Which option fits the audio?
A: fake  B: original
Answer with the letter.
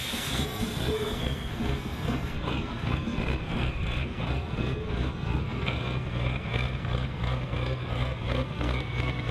A